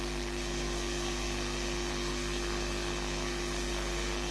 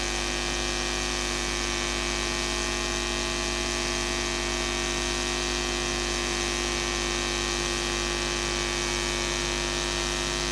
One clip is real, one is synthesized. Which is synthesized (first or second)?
first